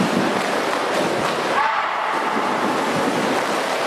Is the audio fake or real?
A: real